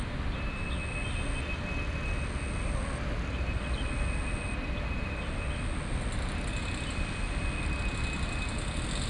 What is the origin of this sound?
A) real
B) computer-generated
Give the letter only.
A